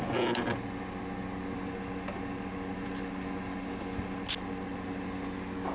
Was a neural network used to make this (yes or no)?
no